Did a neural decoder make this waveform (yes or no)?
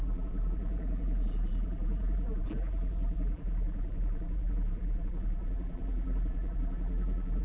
yes